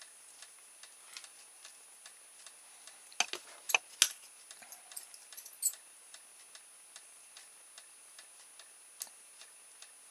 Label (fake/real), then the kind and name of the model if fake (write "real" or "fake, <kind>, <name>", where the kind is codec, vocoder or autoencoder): real